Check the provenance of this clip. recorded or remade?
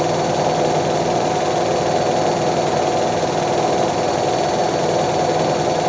recorded